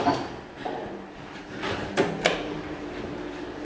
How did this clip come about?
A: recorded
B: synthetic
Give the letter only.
A